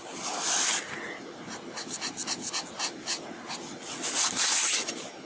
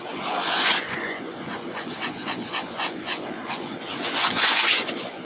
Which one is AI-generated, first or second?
second